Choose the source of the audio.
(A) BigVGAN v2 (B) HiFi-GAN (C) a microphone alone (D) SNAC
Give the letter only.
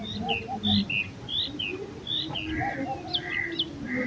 C